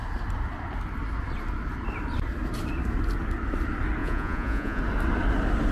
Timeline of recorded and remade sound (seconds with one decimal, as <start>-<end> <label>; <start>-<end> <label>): 0.0-4.0 recorded; 4.0-4.8 remade; 4.8-5.7 recorded